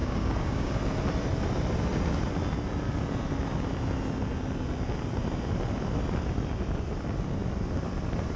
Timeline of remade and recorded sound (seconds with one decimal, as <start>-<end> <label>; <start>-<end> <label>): 0.0-0.7 remade; 0.7-8.4 recorded